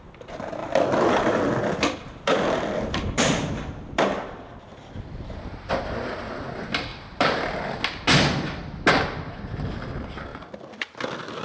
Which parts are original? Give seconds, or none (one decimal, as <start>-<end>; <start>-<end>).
0.0-0.6; 5.7-6.9; 7.4-10.3; 10.9-11.4